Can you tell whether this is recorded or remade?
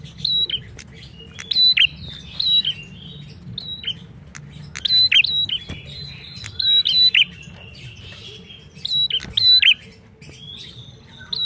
recorded